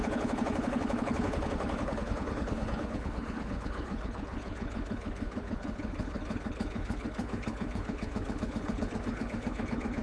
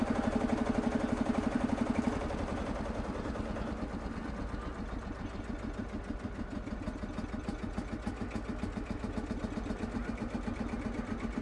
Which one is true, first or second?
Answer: second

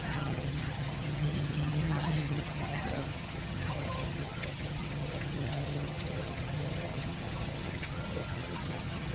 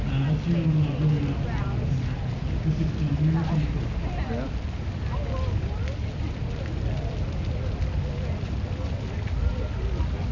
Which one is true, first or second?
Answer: second